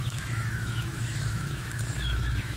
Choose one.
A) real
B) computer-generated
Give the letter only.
B